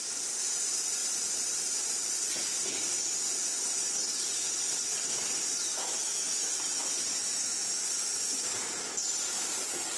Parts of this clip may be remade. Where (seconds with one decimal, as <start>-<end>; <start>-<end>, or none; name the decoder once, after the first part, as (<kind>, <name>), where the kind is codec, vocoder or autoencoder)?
5.7-6.5 (autoencoder, DAC-VAE); 7.2-7.8